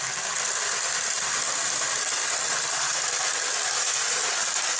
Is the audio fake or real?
real